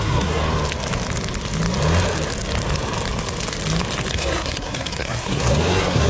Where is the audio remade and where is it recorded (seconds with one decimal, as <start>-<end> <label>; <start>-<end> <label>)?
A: 0.0-0.4 remade; 0.4-4.1 recorded; 4.1-6.1 remade